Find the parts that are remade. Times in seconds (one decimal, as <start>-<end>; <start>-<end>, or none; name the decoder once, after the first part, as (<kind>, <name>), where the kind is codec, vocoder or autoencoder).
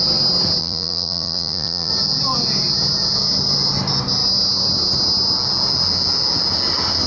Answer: 0.6-1.9 (vocoder, Vocos)